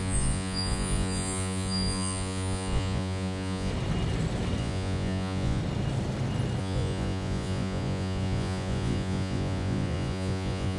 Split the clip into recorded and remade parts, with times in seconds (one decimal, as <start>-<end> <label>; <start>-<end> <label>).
0.0-3.7 remade; 3.7-4.6 recorded; 4.6-5.6 remade; 5.6-6.6 recorded; 6.6-10.8 remade